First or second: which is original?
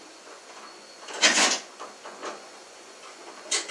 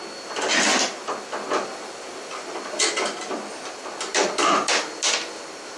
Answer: second